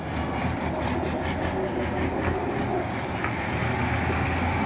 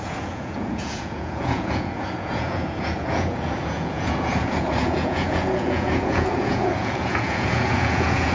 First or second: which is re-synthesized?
second